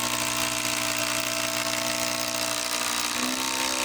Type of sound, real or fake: real